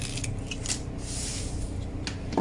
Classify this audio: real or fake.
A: real